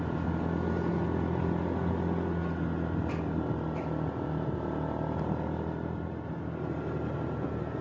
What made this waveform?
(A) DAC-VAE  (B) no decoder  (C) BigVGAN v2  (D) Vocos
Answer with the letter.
B